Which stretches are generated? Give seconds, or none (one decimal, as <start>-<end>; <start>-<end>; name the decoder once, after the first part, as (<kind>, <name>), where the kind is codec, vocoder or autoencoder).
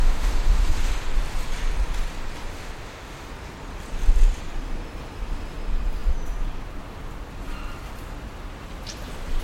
0.0-0.9 (autoencoder, DAC-VAE); 2.5-3.3